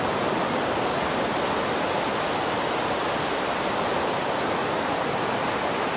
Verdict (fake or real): real